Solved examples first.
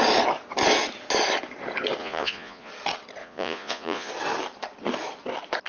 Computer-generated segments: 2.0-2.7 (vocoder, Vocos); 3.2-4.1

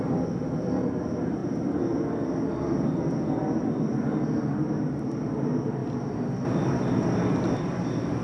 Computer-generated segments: none

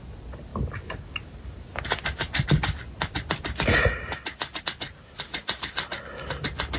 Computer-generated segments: none